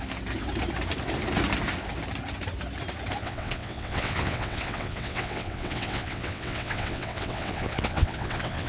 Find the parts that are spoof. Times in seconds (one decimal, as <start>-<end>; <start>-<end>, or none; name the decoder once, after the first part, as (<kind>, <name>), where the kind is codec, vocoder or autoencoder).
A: 3.2-8.7 (vocoder, WaveNeXt)